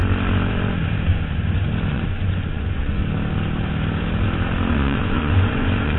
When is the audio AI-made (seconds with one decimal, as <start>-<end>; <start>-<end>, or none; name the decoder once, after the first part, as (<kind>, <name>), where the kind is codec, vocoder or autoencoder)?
1.9-3.0 (vocoder, Vocos); 4.7-6.0